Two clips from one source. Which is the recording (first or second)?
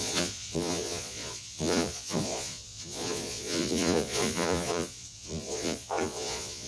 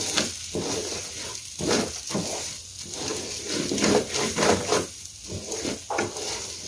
second